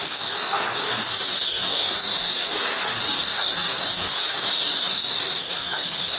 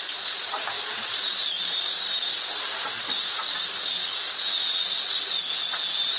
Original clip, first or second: second